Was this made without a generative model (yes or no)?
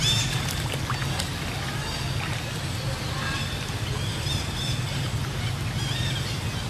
yes